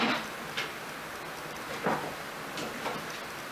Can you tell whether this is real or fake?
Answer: real